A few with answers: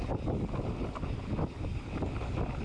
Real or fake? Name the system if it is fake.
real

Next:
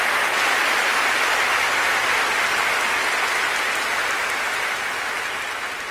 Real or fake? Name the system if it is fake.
real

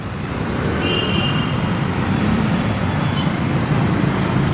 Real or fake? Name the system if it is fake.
fake, vocoder, BigVGAN v2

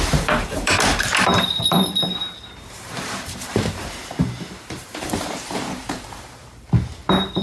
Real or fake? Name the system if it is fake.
fake, vocoder, BigVGAN v2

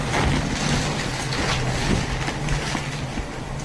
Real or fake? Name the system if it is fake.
real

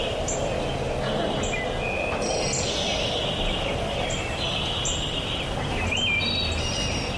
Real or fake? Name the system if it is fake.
real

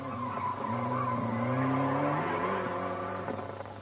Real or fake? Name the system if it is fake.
real